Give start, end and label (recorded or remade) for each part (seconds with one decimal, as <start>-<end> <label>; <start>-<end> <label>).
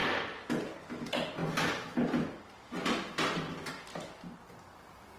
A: 0.0-0.7 remade; 0.7-1.4 recorded; 1.4-3.7 remade; 3.7-5.2 recorded